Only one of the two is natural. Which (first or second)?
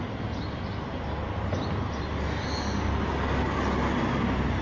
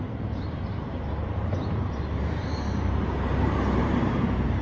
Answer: first